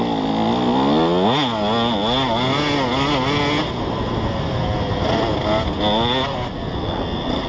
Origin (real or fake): real